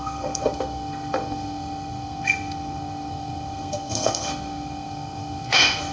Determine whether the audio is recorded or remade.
remade